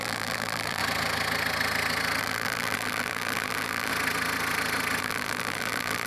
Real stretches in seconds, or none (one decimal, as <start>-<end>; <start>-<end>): 0.8-2.2; 3.9-5.0